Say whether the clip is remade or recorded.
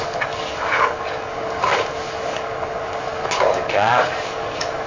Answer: remade